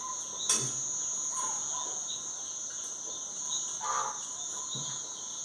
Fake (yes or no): no